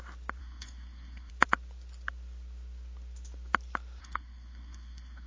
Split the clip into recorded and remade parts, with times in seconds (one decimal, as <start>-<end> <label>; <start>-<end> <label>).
0.0-0.4 recorded; 0.4-1.3 remade; 1.3-4.0 recorded; 4.0-5.3 remade